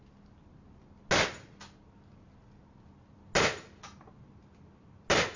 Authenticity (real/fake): real